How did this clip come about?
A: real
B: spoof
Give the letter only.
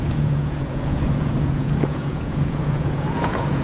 B